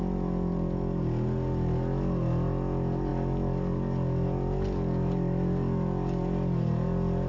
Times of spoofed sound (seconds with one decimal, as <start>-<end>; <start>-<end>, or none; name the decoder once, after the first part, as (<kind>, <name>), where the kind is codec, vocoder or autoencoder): none